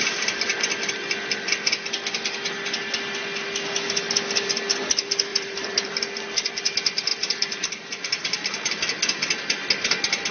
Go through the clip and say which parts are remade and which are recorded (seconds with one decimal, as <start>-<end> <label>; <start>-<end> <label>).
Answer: 0.0-5.3 recorded; 5.3-5.9 remade; 5.9-7.1 recorded; 7.1-8.7 remade; 8.7-10.3 recorded